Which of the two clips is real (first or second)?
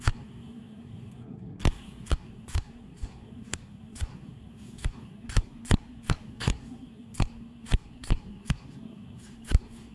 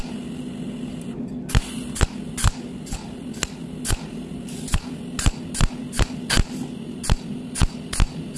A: second